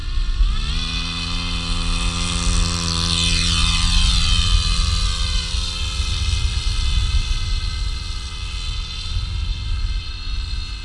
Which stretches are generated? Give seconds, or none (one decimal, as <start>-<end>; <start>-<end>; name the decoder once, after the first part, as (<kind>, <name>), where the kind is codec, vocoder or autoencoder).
none